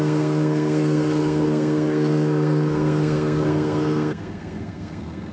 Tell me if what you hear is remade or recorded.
remade